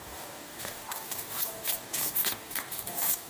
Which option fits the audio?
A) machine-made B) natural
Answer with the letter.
A